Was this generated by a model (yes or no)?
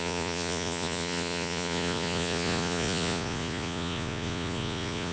yes